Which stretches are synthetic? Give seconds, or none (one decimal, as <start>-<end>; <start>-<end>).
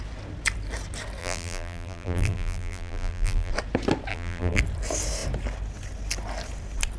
1.2-3.5; 4.1-4.6